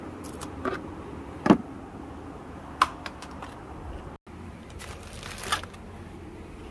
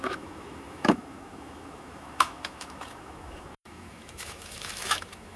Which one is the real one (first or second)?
first